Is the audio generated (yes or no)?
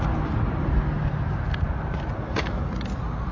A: no